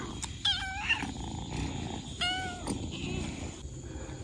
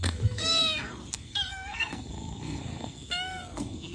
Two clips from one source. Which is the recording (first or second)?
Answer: first